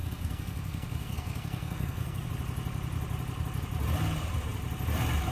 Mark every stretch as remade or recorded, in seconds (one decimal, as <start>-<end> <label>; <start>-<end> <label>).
0.0-2.3 remade; 2.3-5.3 recorded